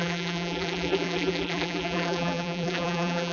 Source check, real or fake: fake